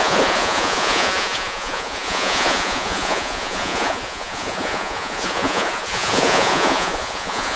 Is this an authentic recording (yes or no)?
no